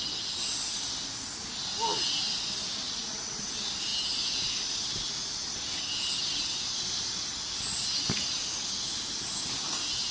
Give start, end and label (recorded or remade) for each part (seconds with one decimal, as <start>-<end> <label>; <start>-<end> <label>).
0.0-10.1 recorded